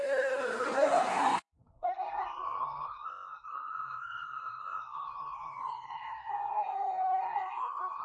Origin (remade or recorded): remade